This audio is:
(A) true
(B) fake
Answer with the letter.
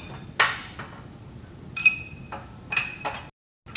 A